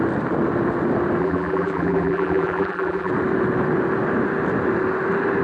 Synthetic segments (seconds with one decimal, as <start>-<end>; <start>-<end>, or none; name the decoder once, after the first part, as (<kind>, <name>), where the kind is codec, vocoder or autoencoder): 1.2-3.1 (vocoder, BigVGAN v2)